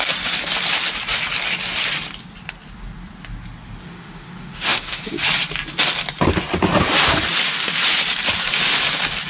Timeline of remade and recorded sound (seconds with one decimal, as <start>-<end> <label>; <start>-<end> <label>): 0.0-3.8 recorded; 3.8-5.0 remade; 5.0-9.3 recorded